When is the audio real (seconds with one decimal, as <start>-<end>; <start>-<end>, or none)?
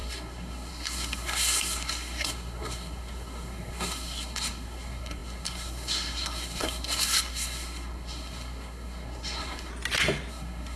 9.7-10.3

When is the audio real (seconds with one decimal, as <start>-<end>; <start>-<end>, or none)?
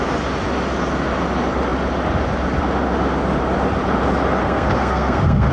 0.0-4.4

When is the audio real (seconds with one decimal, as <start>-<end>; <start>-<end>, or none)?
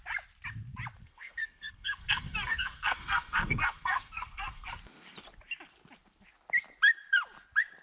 0.0-1.0; 4.7-7.8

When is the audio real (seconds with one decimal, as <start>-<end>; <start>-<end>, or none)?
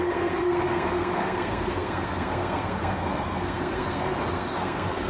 none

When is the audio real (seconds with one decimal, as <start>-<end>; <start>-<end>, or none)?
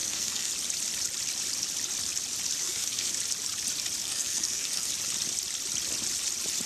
0.5-2.6; 3.1-4.0; 4.9-6.7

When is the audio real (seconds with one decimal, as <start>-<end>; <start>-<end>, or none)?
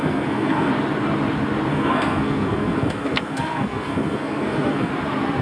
0.7-1.7; 4.9-5.4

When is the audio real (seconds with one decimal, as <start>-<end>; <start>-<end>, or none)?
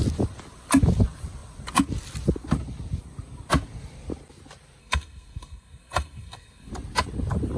0.0-4.8; 6.7-7.6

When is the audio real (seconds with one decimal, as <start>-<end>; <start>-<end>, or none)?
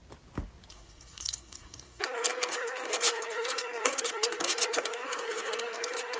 0.0-0.7